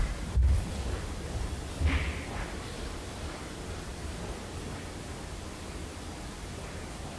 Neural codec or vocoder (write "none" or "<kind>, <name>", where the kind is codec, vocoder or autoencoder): none